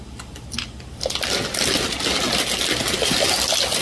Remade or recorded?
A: remade